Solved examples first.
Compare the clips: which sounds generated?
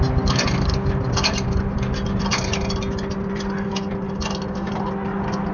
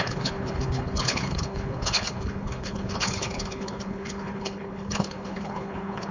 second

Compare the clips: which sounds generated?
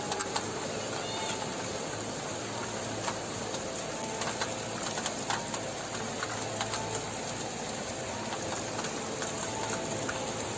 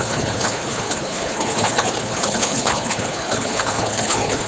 second